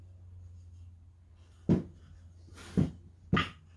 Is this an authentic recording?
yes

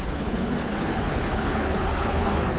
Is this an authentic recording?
no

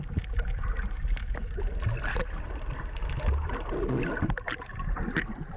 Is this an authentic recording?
yes